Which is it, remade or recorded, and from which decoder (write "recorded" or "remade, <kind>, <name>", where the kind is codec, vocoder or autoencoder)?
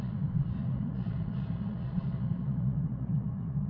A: remade, vocoder, Vocos